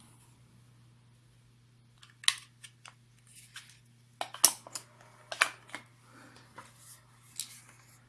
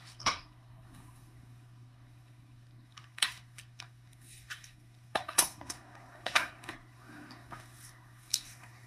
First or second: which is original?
first